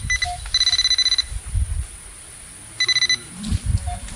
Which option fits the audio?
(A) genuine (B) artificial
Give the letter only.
A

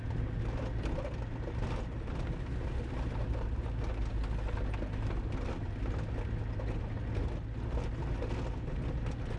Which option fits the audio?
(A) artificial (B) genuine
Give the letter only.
B